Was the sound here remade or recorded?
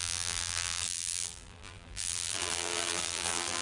remade